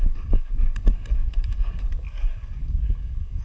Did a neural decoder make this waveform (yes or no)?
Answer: yes